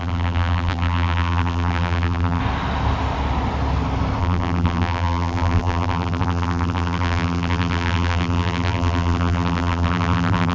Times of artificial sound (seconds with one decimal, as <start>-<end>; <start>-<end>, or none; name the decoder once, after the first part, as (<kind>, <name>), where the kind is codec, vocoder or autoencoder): 0.0-2.4 (vocoder, BigVGAN v2); 4.2-10.5